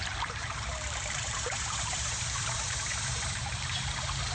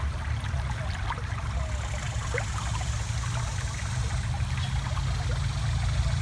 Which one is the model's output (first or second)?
first